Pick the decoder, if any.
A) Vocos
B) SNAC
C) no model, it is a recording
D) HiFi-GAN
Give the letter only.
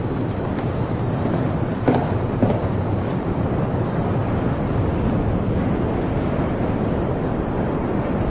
C